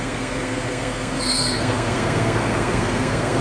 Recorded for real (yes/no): no